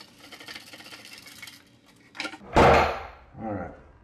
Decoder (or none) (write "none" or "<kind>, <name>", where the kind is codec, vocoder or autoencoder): none